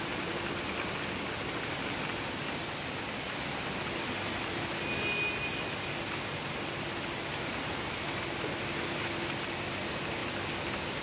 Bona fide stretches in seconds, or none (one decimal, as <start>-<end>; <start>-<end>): 0.0-11.0